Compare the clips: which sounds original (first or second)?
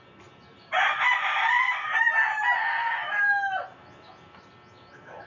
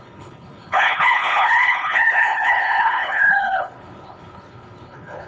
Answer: first